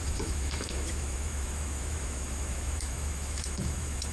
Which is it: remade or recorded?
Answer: remade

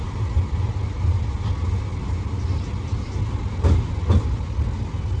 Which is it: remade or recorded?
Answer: recorded